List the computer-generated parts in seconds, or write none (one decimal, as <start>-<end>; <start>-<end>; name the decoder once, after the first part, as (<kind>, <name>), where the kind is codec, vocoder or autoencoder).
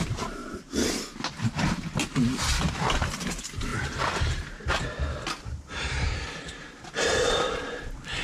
0.0-0.4 (vocoder, BigVGAN v2); 3.2-3.7; 5.4-8.2